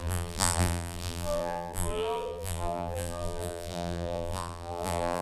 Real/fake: fake